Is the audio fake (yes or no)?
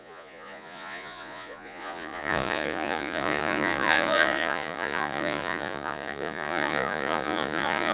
yes